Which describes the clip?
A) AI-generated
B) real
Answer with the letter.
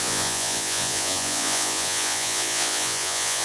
A